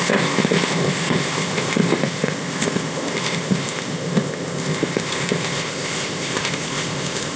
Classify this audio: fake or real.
fake